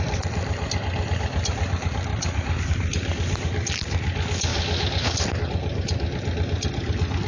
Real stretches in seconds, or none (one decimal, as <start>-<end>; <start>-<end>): 0.0-7.3